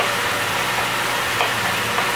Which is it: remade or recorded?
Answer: recorded